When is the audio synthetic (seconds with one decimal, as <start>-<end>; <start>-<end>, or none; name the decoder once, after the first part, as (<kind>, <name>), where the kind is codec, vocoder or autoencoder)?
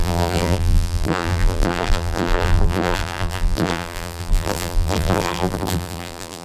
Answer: 0.0-6.4 (vocoder, BigVGAN v2)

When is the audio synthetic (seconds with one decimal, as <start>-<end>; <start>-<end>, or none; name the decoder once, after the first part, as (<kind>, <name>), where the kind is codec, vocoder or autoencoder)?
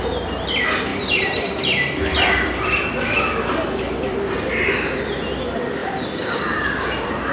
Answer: 0.9-4.7 (vocoder, BigVGAN v2); 5.8-7.3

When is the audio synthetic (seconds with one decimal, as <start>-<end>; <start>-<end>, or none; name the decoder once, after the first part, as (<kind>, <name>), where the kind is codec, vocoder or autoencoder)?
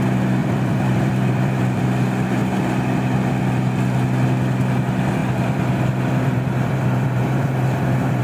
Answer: 0.4-1.8 (vocoder, BigVGAN v2); 5.2-8.2